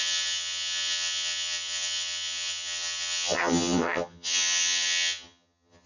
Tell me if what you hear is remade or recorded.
remade